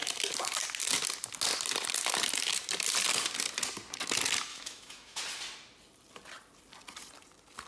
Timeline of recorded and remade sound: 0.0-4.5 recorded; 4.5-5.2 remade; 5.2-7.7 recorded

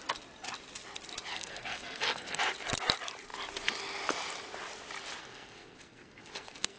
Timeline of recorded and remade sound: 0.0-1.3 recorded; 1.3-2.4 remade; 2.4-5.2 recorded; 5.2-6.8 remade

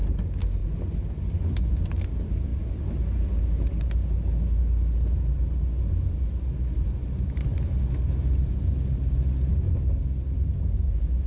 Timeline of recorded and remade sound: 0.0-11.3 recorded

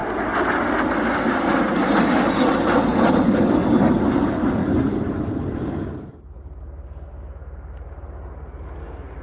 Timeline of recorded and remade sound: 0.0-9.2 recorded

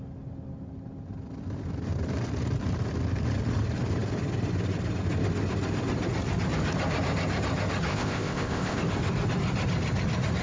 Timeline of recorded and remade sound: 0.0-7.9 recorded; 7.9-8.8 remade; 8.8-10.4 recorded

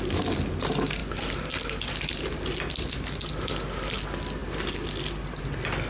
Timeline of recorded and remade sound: 0.0-5.9 recorded